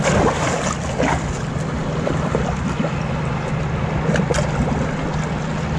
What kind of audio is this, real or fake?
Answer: real